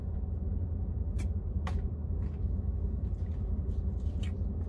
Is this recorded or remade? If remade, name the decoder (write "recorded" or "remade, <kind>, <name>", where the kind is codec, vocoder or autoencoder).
remade, vocoder, BigVGAN v2